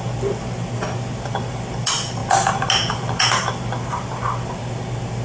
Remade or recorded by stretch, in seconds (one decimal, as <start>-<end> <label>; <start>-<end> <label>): 0.0-5.2 recorded